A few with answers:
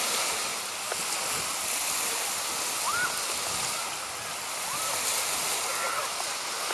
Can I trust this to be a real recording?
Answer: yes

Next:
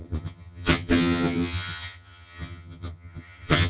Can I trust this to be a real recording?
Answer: no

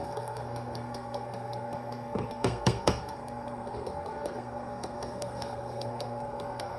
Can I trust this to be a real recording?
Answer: no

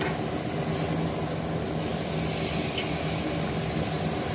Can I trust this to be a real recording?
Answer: yes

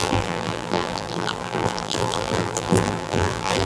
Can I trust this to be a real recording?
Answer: no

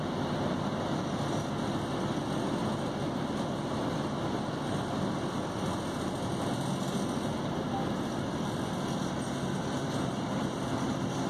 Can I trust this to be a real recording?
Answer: yes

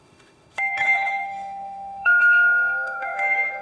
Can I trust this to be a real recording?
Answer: no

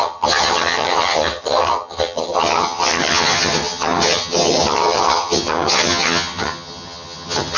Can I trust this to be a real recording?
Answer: no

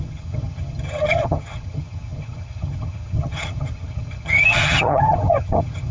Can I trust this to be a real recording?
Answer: no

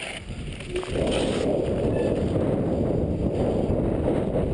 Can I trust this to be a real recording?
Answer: yes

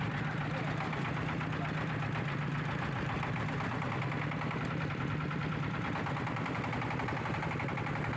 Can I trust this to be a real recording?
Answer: no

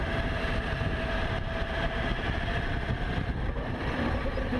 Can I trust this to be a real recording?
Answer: no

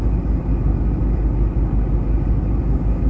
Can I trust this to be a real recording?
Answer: yes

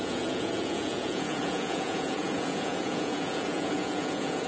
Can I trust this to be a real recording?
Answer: no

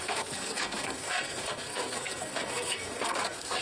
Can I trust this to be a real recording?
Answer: no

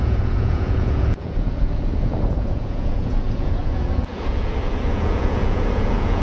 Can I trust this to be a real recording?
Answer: no